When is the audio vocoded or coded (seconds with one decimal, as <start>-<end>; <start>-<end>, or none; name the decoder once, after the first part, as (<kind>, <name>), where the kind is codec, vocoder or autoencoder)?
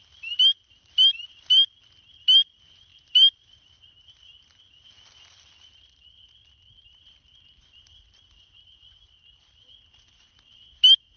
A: none